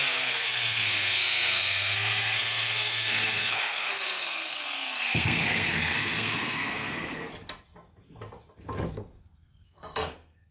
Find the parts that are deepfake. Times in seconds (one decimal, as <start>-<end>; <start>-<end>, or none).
0.0-7.2; 8.9-10.5